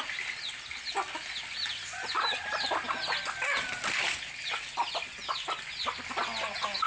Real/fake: real